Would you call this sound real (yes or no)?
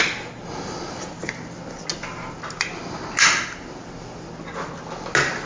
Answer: yes